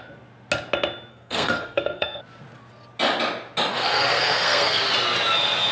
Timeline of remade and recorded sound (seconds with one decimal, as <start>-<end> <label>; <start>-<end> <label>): 0.0-1.1 recorded; 1.1-2.2 remade; 2.2-3.7 recorded; 3.7-4.8 remade; 4.8-5.7 recorded